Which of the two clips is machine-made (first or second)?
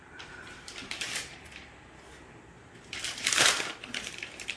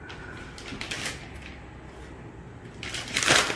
first